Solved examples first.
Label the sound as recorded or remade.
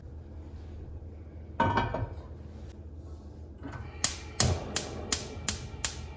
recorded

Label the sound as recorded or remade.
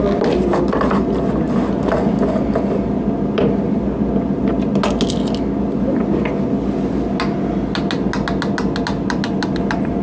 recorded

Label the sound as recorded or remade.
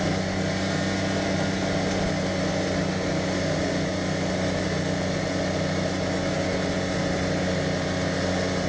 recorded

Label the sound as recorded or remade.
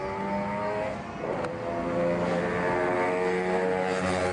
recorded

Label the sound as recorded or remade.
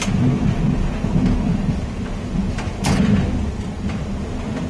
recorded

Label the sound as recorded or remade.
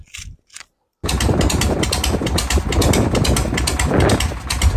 recorded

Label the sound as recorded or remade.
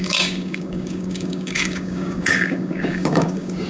remade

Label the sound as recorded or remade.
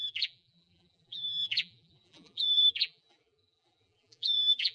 remade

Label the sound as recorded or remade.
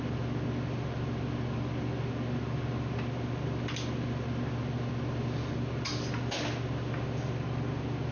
recorded